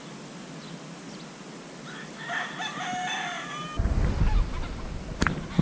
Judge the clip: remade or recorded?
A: recorded